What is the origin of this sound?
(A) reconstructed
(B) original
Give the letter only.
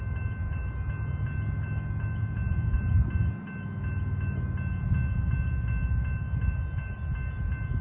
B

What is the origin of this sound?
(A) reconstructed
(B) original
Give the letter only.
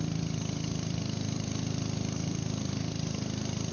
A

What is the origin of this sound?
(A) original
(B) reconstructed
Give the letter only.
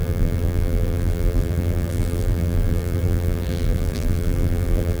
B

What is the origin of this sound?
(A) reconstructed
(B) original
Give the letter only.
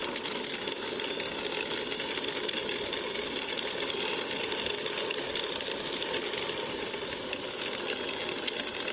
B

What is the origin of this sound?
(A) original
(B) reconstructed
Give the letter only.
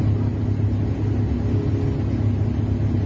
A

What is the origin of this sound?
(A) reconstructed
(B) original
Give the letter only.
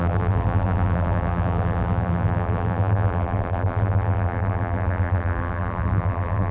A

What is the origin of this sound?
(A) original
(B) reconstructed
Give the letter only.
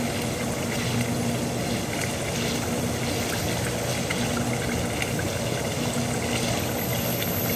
A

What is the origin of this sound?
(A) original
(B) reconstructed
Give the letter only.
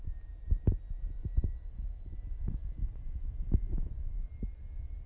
A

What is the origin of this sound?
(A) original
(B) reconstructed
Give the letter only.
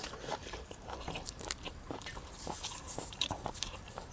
B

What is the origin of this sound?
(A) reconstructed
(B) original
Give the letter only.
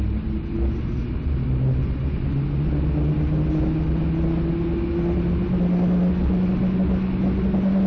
B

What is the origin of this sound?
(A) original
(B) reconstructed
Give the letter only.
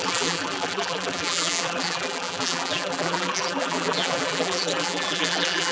B